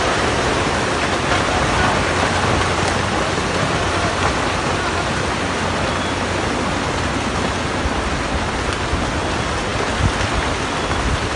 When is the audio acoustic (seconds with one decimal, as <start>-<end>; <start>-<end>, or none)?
0.0-11.4